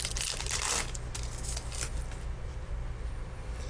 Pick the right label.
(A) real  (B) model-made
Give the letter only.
A